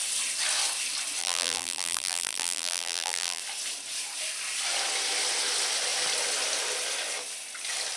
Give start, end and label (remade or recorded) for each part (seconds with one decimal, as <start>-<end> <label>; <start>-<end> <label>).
0.0-1.2 recorded; 1.2-3.4 remade; 3.4-8.0 recorded